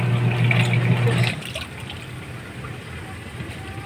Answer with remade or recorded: recorded